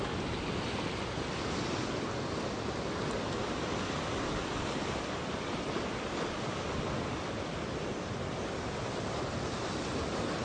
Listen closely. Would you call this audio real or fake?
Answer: real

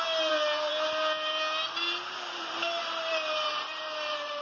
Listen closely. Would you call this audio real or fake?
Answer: fake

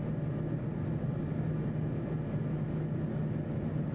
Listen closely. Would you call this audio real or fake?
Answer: real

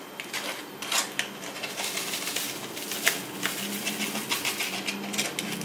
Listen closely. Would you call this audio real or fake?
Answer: real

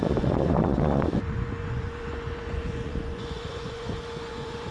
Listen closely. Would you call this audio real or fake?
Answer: fake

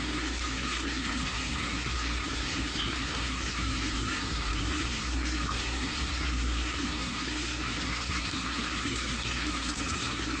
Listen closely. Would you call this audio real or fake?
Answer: fake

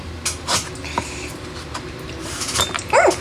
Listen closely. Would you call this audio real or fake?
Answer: real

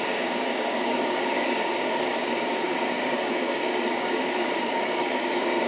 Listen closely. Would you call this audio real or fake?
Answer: fake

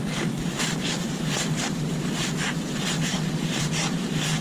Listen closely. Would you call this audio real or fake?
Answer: fake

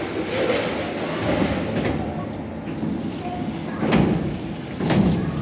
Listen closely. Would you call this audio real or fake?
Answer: real